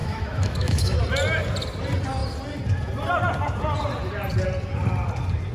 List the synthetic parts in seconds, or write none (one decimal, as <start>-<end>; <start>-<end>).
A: 0.0-1.0

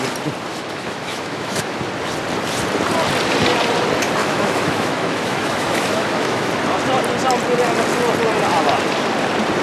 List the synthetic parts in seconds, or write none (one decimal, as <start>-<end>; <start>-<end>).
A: 0.5-1.8; 4.2-6.5

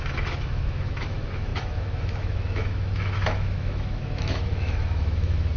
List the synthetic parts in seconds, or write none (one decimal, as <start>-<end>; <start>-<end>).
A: 0.0-5.6

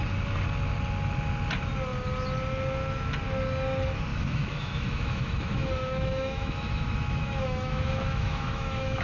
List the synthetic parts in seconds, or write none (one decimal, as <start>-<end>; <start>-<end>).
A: 4.1-9.0

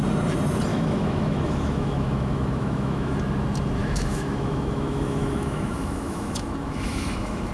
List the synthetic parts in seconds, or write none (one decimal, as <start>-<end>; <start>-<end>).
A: 0.7-3.2; 3.8-7.5